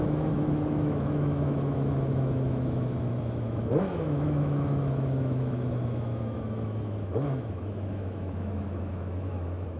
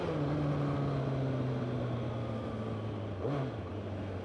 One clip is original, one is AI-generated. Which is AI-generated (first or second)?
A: first